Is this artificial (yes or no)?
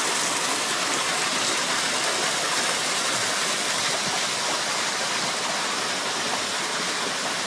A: no